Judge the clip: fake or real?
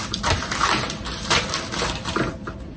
real